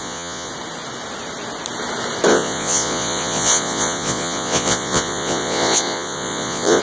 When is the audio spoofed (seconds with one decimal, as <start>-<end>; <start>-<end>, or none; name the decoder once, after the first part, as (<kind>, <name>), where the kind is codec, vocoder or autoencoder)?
0.0-0.5 (vocoder, Vocos); 2.3-6.8

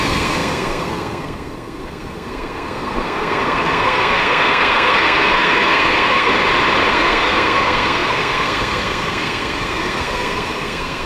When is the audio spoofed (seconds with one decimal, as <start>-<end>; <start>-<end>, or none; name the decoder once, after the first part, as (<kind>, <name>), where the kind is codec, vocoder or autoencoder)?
0.0-6.3 (codec, SNAC); 6.9-11.1

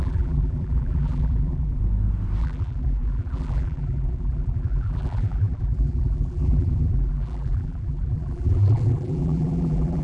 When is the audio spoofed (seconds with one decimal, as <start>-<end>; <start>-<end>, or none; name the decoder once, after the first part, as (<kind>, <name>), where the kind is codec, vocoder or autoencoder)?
0.0-1.8 (vocoder, BigVGAN v2); 2.4-10.0

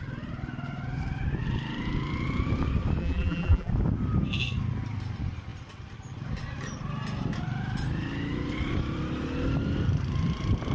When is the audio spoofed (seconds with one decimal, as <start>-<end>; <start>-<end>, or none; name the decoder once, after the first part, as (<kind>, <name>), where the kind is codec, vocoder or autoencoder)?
3.0-3.7 (vocoder, BigVGAN v2)

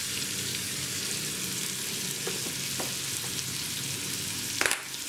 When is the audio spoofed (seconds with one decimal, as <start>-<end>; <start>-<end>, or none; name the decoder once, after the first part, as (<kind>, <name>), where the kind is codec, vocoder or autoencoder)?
0.5-1.0 (codec, DAC)

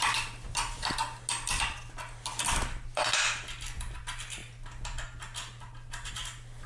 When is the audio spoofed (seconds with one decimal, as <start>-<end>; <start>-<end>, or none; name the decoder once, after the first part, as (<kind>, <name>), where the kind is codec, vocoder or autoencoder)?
none

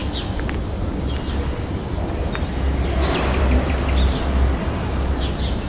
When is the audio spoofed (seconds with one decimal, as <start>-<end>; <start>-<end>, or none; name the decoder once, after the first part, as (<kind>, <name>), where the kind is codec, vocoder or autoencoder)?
4.6-5.1 (codec, DAC)